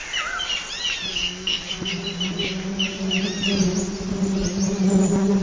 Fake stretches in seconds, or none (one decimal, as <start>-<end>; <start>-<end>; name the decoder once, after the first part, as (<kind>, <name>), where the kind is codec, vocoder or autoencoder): 1.1-1.9 (codec, SNAC)